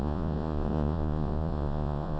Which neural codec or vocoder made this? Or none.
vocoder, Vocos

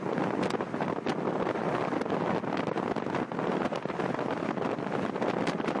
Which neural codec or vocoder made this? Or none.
none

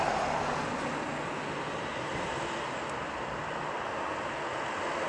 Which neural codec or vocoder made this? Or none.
none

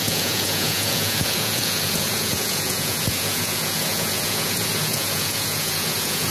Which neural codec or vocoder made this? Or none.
vocoder, Vocos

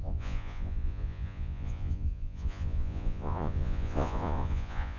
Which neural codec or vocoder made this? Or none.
vocoder, Vocos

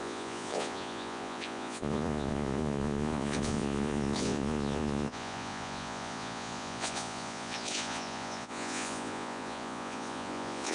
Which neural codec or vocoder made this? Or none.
vocoder, Vocos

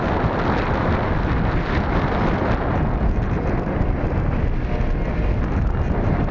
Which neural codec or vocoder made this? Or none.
none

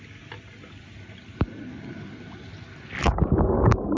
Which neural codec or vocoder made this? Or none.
none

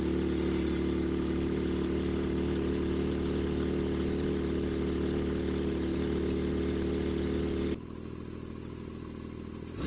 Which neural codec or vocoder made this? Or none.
none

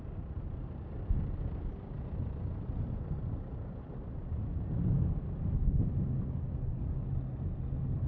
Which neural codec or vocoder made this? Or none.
none